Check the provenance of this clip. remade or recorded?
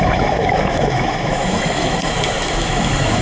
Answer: remade